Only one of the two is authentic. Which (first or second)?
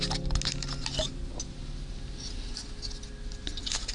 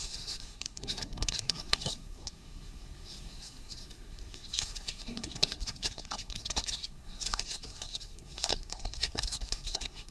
first